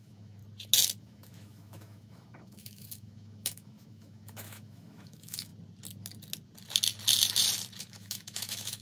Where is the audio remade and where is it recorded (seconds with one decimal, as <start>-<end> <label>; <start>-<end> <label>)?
0.0-0.4 remade; 0.4-1.0 recorded; 1.0-5.5 remade; 5.5-7.8 recorded; 7.8-8.8 remade